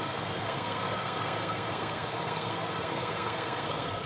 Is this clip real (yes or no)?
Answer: no